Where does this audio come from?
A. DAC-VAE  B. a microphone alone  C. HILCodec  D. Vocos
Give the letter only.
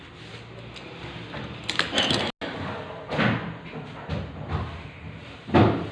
B